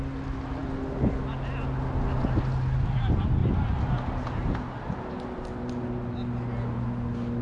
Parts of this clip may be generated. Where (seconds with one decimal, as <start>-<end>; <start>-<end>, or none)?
none